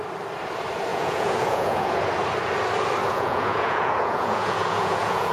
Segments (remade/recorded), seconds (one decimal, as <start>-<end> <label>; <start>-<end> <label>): 0.0-0.9 recorded; 0.9-2.0 remade; 2.0-3.1 recorded; 3.1-5.3 remade